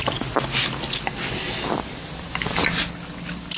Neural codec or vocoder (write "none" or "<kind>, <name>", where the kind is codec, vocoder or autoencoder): none